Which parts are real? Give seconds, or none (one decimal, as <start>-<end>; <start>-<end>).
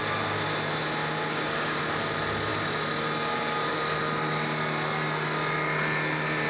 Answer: 0.0-1.2; 1.8-6.5